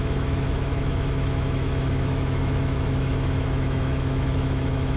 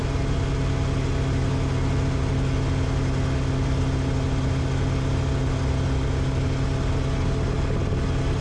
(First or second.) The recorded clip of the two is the second